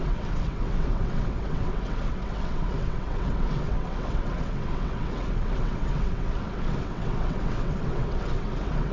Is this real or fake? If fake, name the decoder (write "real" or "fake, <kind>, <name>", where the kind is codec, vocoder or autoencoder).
fake, vocoder, WaveNeXt